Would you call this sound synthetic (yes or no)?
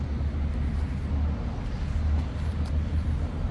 no